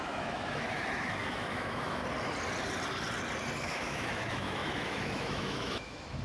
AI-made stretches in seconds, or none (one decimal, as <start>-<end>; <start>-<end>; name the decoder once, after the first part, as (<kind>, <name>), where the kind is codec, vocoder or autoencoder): 0.0-2.0 (autoencoder, DAC-VAE); 3.6-6.2